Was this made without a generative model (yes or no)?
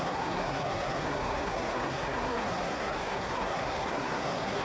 no